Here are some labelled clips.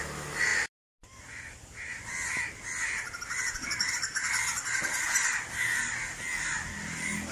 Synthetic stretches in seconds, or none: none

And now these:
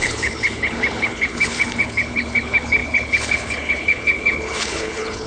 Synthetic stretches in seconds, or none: 0.0-5.3 (codec, HILCodec)

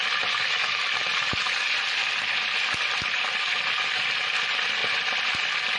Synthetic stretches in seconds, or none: none

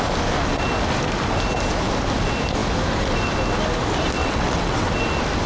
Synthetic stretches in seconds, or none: 4.2-4.9 (vocoder, WaveNeXt)